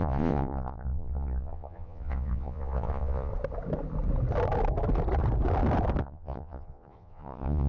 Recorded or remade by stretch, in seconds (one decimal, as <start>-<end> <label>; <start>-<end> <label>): 0.0-3.3 remade; 3.3-6.0 recorded; 6.0-7.7 remade